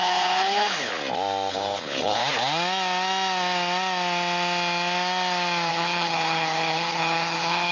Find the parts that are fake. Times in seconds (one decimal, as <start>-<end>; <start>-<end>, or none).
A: 0.0-0.9; 1.5-2.2; 5.7-7.7